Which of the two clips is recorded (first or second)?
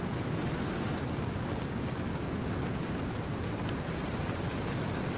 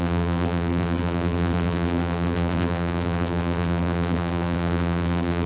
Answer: first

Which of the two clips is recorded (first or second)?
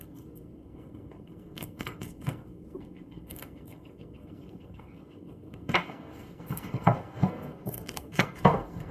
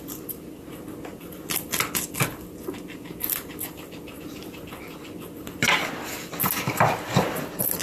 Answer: second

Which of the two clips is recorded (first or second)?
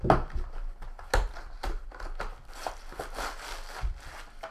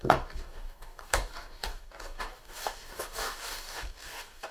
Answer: first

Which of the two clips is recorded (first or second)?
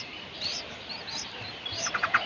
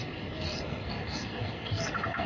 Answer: first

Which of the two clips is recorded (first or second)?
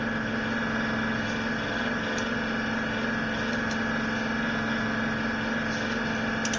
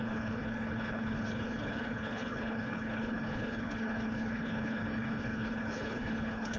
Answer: first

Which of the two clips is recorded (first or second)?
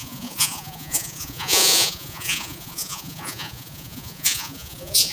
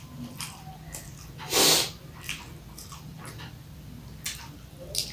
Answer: second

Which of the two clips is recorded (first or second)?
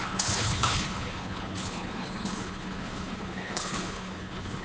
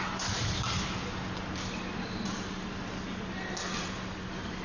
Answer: second